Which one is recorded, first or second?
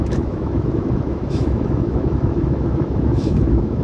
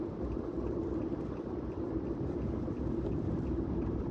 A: second